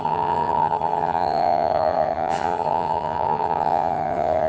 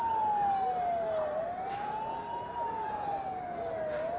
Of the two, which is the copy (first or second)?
first